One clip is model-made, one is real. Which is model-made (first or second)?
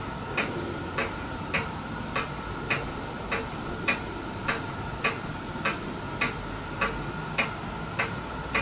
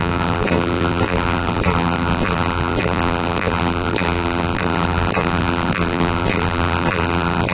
second